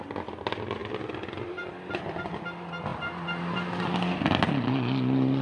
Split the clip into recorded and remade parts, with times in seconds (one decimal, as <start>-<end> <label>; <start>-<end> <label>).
0.0-5.4 recorded